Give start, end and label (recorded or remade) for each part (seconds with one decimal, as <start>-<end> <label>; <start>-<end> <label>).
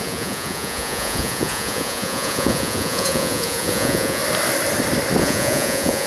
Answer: 0.0-4.2 remade; 4.2-5.2 recorded; 5.2-6.1 remade